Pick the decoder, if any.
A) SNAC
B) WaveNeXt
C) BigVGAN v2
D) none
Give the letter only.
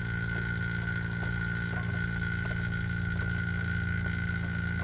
D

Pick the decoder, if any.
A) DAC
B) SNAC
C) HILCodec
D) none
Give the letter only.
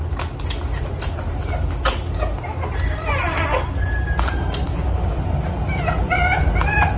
D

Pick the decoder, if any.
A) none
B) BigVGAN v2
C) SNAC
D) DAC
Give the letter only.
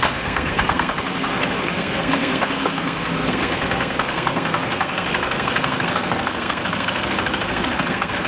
C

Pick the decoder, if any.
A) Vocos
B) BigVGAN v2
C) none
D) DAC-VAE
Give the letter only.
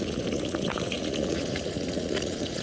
A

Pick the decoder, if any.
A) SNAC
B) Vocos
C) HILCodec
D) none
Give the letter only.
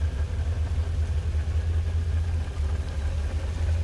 D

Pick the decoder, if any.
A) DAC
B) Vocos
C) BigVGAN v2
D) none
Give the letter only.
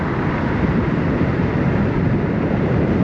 D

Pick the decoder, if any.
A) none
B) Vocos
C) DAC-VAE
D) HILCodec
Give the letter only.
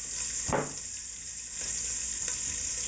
A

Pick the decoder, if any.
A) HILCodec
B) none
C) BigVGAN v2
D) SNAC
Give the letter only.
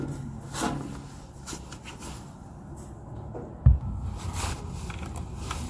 B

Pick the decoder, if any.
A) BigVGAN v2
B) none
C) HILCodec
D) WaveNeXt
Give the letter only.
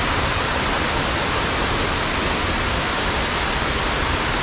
B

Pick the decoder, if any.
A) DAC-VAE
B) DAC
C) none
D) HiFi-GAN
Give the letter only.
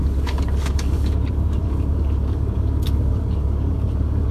B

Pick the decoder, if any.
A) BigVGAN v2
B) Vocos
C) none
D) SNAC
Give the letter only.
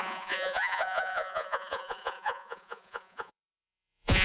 B